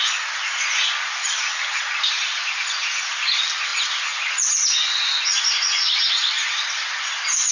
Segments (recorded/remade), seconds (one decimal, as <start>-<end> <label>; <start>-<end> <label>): 0.0-1.2 recorded; 1.2-1.8 remade; 1.8-7.5 recorded